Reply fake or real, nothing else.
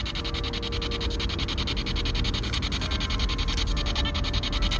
real